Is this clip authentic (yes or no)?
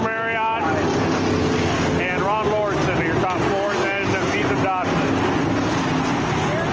yes